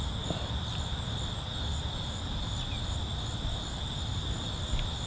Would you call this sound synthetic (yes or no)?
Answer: no